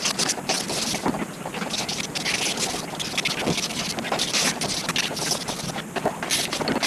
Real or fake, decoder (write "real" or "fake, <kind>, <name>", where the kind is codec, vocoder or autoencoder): real